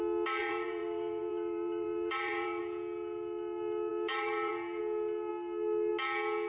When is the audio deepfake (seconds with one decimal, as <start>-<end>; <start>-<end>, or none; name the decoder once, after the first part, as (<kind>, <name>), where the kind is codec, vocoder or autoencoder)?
0.4-2.6 (vocoder, BigVGAN v2); 3.9-4.8